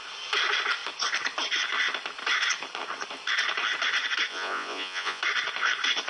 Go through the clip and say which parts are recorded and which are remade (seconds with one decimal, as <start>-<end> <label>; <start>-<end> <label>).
0.0-4.3 recorded; 4.3-5.2 remade; 5.2-6.1 recorded